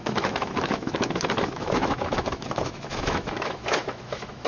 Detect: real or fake fake